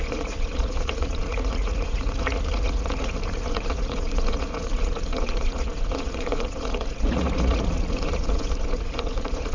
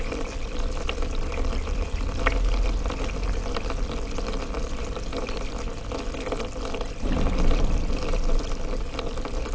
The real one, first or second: second